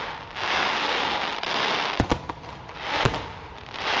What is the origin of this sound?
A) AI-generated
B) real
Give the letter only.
B